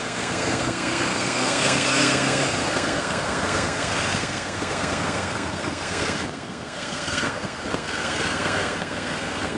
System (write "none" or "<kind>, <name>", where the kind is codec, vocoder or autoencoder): codec, SNAC